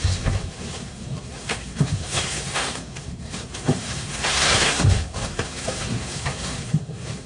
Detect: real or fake fake